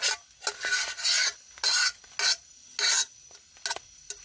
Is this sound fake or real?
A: real